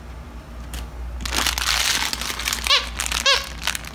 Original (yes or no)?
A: yes